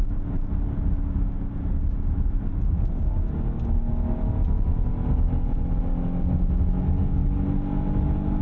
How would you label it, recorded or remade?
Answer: recorded